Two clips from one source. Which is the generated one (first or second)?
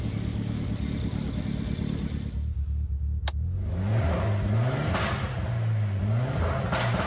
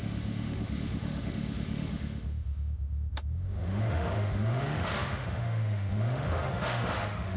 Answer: second